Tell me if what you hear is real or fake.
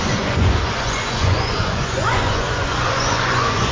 fake